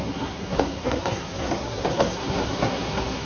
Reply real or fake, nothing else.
fake